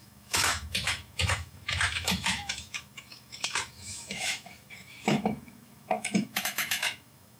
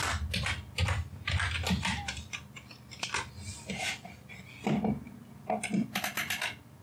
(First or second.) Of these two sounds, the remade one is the first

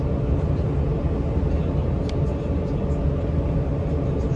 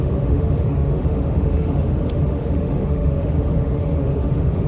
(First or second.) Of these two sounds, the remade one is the second